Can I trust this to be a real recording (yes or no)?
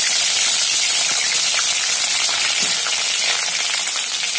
yes